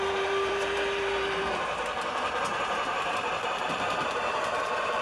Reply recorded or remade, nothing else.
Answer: remade